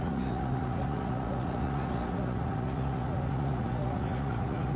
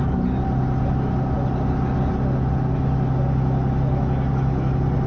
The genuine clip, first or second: second